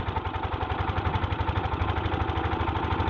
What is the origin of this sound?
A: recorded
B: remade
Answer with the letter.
A